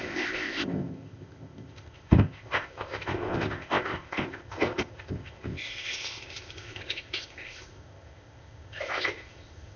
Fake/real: fake